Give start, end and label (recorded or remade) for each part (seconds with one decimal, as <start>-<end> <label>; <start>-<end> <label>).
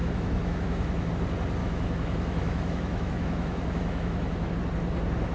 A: 0.0-1.1 remade; 1.1-1.6 recorded; 1.6-4.5 remade; 4.5-5.3 recorded